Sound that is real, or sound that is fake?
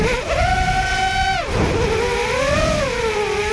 real